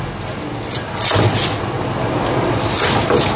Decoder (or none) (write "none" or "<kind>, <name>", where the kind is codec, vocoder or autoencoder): none